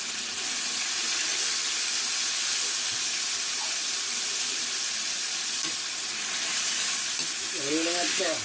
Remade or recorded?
recorded